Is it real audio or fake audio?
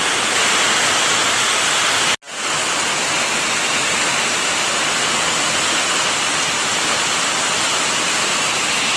real